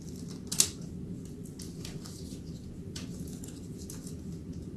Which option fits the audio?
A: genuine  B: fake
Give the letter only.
A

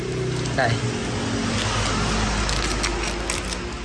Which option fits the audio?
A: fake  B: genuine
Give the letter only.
B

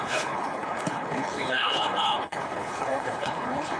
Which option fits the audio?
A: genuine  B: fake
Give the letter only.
B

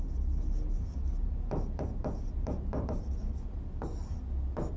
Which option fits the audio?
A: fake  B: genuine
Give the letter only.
B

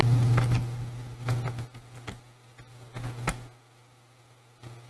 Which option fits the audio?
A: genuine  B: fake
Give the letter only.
A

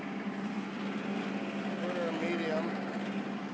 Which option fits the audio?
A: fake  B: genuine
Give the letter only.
B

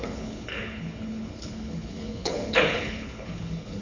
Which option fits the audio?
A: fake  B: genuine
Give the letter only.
A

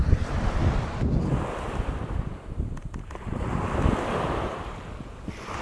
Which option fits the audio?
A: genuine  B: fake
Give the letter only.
A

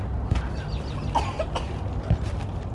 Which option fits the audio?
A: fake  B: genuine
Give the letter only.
B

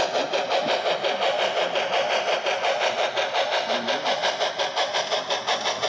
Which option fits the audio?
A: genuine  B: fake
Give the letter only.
A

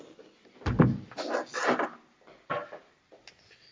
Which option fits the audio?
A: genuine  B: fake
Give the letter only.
A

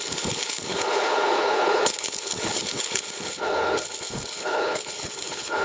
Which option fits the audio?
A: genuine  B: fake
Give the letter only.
B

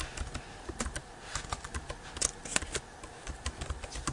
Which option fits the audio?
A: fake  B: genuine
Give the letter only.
B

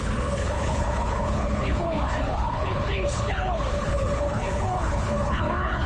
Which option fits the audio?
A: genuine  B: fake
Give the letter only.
B